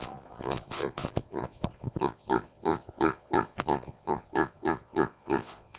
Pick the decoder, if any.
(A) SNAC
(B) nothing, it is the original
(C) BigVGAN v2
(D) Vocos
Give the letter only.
D